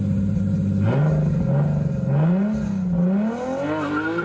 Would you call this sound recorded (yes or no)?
yes